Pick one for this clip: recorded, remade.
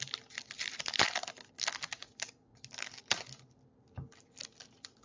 recorded